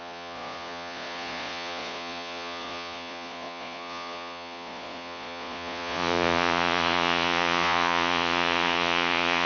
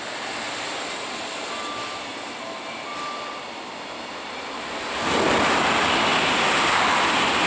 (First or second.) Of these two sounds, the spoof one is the first